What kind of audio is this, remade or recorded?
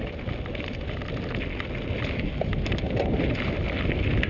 recorded